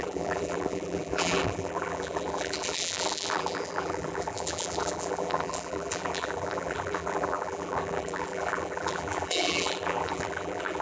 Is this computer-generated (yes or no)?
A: yes